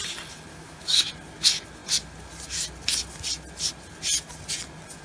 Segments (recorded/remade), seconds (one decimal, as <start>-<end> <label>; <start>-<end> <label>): 0.0-0.5 recorded; 0.5-1.1 remade; 1.1-5.0 recorded